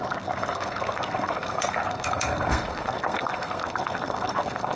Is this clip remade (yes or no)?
yes